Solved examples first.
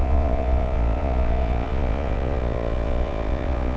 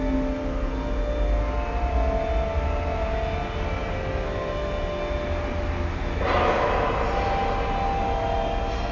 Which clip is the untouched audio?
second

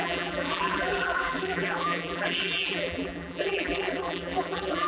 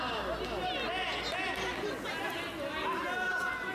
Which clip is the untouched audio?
second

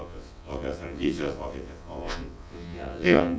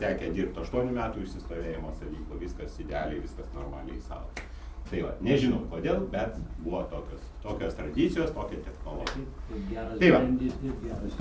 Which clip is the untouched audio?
second